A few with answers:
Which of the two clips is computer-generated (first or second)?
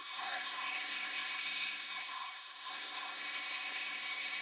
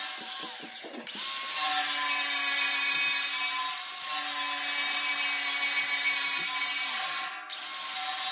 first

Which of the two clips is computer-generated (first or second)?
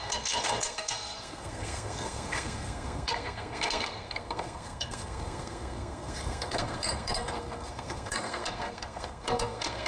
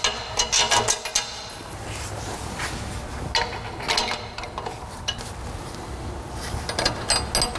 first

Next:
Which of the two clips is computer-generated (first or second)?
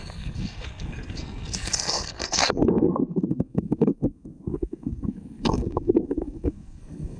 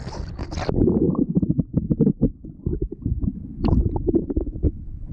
first